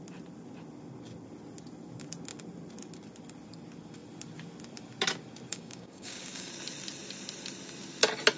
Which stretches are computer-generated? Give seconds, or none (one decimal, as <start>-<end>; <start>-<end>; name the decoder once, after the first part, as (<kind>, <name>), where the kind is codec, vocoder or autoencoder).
5.5-6.5 (codec, DAC)

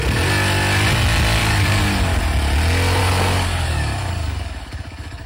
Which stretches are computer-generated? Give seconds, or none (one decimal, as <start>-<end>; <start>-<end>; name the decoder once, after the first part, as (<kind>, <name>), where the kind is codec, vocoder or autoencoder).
1.4-2.2 (codec, DAC); 3.0-5.3

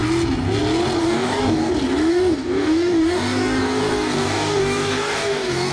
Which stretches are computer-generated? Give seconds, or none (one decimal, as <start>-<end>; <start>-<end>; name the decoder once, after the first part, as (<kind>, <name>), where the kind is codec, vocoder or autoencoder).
1.0-1.7 (codec, DAC); 2.1-5.7

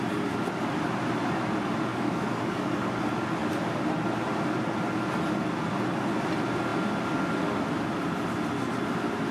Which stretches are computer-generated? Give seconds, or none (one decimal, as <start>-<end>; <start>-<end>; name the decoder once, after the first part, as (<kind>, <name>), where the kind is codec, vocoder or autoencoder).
1.9-3.0 (codec, DAC)

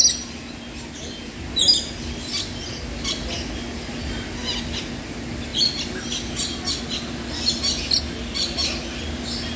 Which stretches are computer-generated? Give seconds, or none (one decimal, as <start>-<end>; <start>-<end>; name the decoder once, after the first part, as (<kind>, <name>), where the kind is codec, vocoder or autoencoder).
none

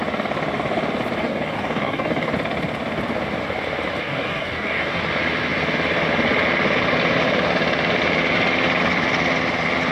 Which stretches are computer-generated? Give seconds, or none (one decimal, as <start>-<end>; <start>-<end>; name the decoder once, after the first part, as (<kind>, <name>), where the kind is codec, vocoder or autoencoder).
1.2-2.3 (codec, DAC); 4.0-5.0

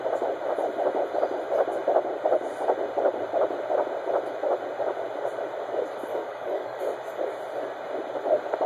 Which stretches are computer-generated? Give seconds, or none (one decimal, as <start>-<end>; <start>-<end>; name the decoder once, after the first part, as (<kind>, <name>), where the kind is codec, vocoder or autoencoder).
6.1-6.8 (codec, DAC)